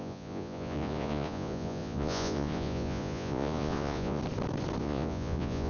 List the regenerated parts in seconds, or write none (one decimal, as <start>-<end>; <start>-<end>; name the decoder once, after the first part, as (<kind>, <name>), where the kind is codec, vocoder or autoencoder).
0.0-4.2 (vocoder, Vocos); 4.8-5.7

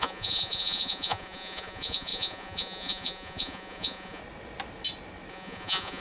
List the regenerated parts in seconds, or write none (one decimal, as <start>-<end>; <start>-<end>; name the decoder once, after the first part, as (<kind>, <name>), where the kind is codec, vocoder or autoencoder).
0.0-4.2 (vocoder, Vocos); 5.3-6.0

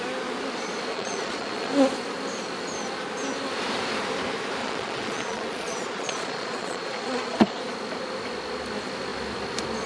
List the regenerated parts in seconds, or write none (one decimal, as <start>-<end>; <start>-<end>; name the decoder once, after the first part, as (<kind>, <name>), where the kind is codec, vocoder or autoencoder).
0.9-1.7 (vocoder, Vocos); 4.6-7.6

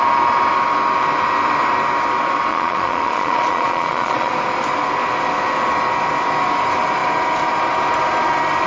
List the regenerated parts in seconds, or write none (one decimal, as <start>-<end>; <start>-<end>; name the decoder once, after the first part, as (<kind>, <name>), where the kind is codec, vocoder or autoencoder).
2.5-4.3 (vocoder, Vocos)